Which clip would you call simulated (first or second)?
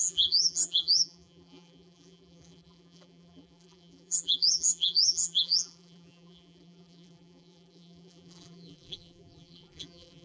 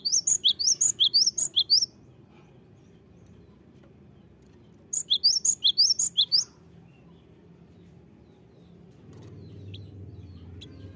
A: first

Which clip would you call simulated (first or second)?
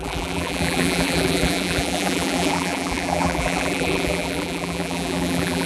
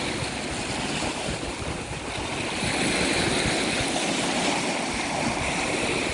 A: first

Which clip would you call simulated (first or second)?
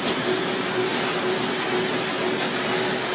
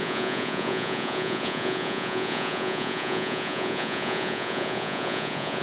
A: second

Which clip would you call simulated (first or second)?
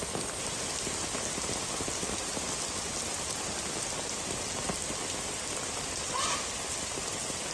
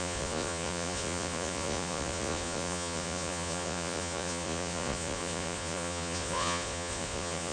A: second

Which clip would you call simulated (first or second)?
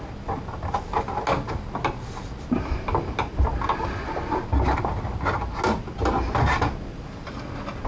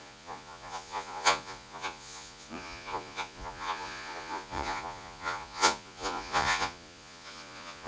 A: second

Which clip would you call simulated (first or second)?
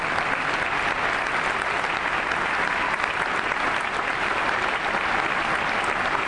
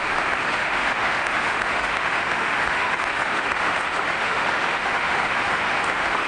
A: second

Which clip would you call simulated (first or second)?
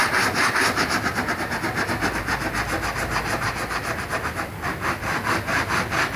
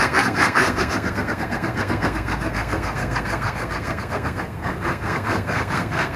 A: second